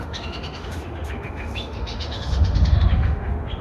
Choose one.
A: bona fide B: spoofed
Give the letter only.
B